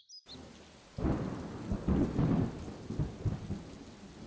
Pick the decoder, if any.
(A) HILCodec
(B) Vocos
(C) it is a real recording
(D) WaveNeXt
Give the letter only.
C